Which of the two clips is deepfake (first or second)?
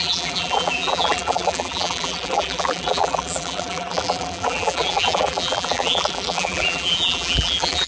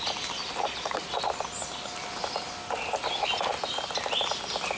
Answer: first